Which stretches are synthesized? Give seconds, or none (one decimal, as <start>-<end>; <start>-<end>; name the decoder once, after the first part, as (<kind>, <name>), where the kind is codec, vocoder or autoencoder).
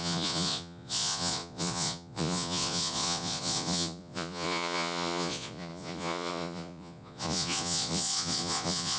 0.0-9.0 (vocoder, Vocos)